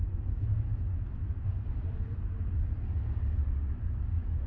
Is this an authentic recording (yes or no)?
yes